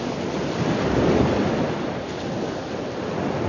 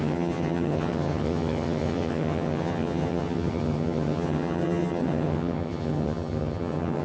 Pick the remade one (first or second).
second